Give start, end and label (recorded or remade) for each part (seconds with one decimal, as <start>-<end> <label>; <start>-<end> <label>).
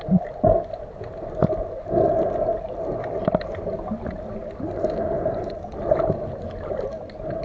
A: 0.0-7.4 recorded